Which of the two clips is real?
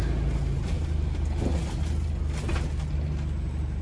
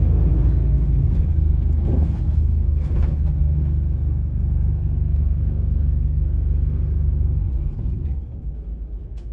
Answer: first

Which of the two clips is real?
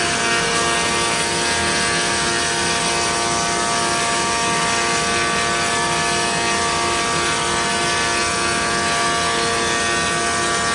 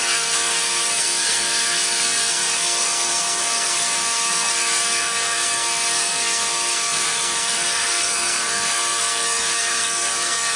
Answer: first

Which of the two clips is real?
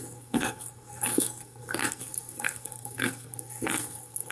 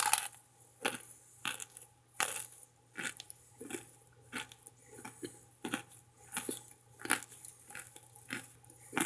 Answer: second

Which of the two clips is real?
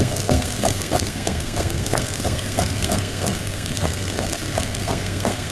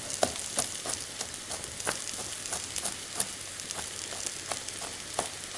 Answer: second